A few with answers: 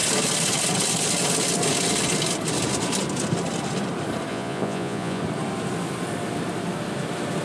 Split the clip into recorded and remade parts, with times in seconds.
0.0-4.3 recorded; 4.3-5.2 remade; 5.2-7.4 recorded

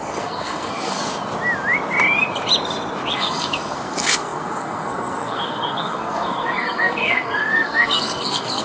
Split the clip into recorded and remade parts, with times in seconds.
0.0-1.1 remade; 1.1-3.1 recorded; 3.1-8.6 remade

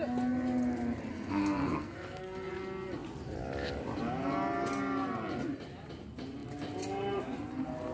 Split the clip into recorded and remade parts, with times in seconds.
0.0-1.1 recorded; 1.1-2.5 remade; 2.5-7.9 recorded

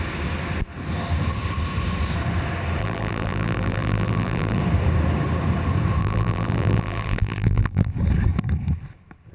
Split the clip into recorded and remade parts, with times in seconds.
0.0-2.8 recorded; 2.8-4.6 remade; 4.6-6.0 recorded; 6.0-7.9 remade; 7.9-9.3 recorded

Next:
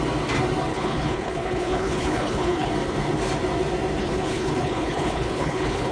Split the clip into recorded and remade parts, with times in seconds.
0.0-0.7 recorded; 0.7-2.7 remade; 2.7-4.0 recorded; 4.0-5.9 remade